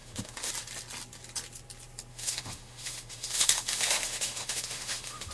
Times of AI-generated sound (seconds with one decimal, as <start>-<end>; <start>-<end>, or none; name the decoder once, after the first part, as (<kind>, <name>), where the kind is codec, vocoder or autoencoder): 0.0-0.5 (autoencoder, DAC-VAE); 2.1-5.3